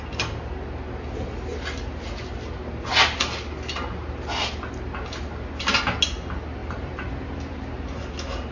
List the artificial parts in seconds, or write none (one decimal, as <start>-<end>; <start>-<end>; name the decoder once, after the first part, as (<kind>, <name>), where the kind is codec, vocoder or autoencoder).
6.6-7.7 (vocoder, BigVGAN v2)